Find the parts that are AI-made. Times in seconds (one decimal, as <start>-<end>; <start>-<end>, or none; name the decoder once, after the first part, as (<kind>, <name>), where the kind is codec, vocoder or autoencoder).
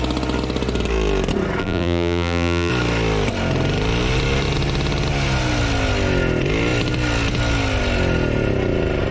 1.6-2.7 (vocoder, BigVGAN v2)